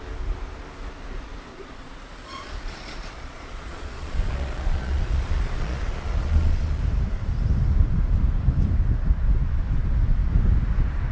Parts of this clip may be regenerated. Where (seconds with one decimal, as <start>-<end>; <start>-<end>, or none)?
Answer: 1.5-6.8